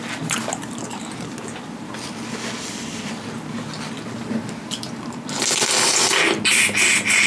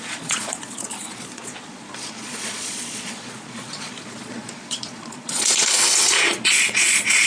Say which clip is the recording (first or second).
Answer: first